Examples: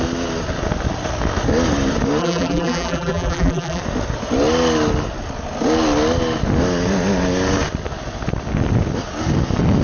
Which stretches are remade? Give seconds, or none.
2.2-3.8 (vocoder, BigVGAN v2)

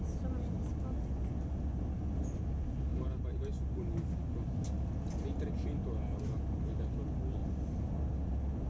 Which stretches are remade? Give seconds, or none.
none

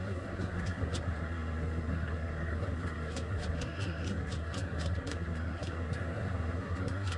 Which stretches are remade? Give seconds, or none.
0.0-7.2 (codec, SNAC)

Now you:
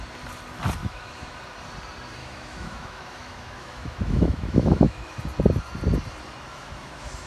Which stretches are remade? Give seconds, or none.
0.8-1.4 (autoencoder, DAC-VAE); 2.2-5.2; 6.5-7.3

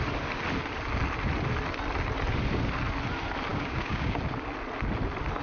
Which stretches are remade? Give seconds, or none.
3.5-4.2 (codec, DAC)

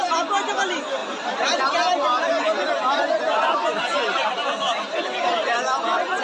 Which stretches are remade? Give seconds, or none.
1.0-1.6 (vocoder, BigVGAN v2)

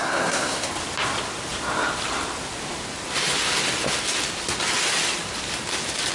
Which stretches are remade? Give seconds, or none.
0.0-0.7 (codec, SNAC)

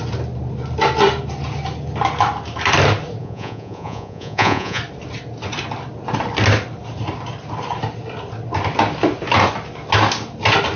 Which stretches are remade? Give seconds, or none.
3.2-4.8 (vocoder, Vocos)